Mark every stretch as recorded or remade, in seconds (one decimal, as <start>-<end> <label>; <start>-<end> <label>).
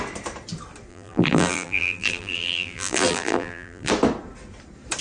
0.0-0.9 recorded; 0.9-3.9 remade; 3.9-5.0 recorded